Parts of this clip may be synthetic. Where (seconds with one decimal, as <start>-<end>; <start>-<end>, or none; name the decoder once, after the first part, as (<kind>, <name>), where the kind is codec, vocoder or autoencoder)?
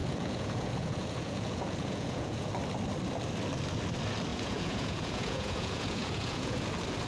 0.0-2.5 (vocoder, Vocos); 4.3-6.6